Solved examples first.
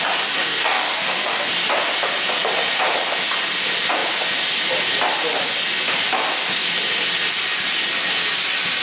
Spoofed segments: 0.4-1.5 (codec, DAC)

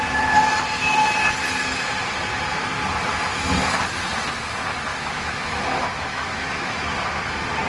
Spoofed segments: 4.9-6.8 (autoencoder, DAC-VAE)

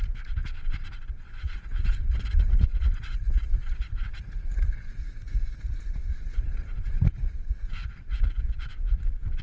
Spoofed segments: 0.0-0.4 (vocoder, Vocos); 1.3-9.4

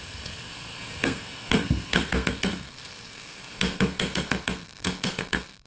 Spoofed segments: 0.0-5.7 (codec, SNAC)

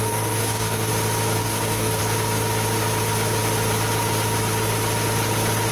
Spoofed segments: 0.0-0.9 (codec, DAC); 1.4-2.0

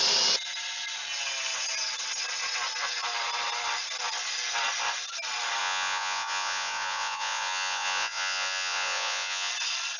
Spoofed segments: 5.6-9.5 (vocoder, Vocos)

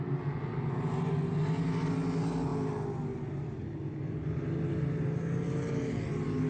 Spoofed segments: none

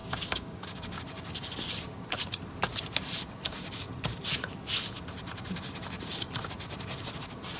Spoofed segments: 0.0-1.0 (codec, DAC)